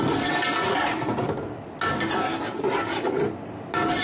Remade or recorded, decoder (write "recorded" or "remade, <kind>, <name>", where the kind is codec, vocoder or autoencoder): recorded